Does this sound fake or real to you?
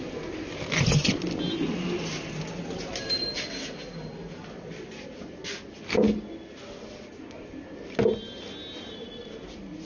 real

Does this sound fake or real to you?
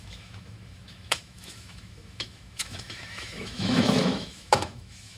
fake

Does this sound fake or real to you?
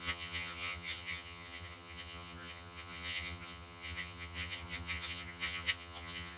fake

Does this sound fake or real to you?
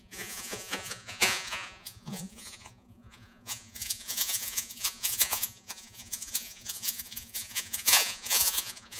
fake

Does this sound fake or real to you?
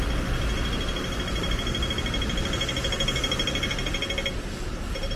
real